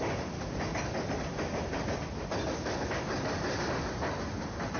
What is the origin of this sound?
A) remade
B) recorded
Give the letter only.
B